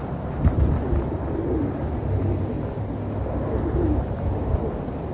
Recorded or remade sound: recorded